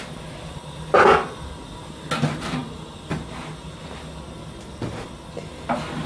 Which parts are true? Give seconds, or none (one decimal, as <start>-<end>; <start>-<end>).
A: 0.0-6.1